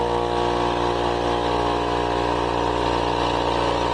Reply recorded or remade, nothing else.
recorded